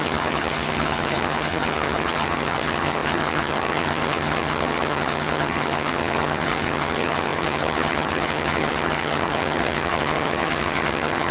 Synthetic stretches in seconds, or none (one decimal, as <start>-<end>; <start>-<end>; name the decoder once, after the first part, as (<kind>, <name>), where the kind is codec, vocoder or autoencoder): 0.0-11.3 (vocoder, HiFi-GAN)